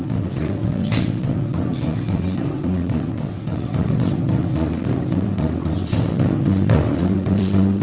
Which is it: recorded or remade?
remade